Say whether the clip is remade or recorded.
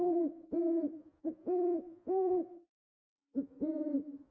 remade